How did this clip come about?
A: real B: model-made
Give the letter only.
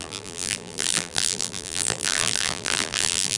B